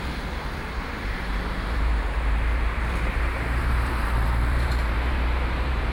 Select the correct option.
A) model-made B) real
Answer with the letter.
A